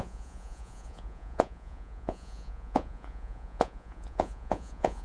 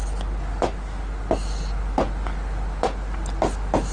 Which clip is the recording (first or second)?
second